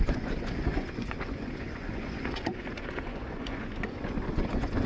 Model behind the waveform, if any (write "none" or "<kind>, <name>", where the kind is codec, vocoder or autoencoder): vocoder, Vocos